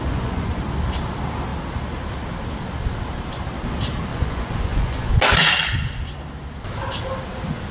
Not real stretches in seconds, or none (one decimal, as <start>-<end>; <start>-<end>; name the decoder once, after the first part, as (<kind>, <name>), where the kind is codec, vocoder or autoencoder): 0.0-0.6 (vocoder, Vocos); 4.1-5.1